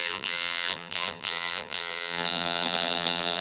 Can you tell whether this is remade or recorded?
remade